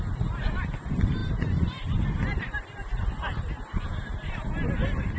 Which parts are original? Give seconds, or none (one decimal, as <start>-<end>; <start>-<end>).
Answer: 0.0-5.2